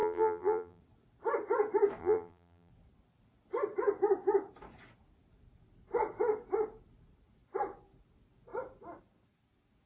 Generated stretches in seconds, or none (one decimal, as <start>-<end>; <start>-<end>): 0.0-0.8; 2.0-2.7